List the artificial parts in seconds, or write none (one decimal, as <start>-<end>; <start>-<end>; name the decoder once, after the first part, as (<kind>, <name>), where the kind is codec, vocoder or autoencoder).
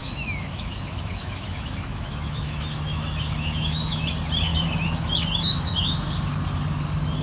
0.0-4.1 (autoencoder, DAC-VAE); 4.5-6.1